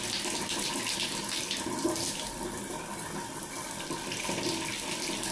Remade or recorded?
recorded